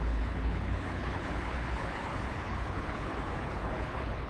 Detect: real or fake fake